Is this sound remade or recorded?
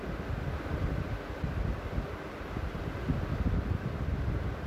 recorded